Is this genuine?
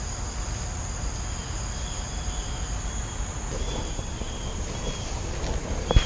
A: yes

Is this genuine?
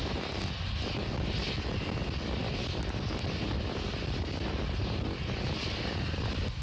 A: yes